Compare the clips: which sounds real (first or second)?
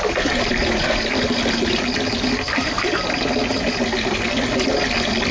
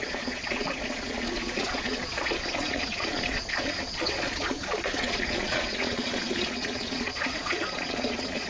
first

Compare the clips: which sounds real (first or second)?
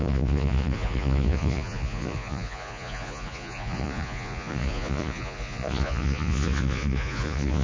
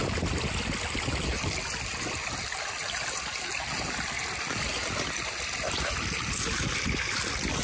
second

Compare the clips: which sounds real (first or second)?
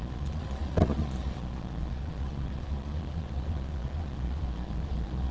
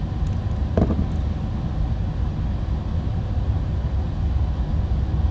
second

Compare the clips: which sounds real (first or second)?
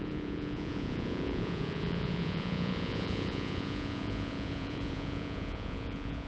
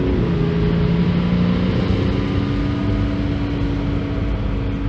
second